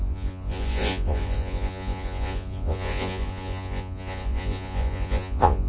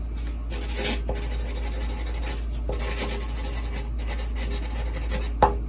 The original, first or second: second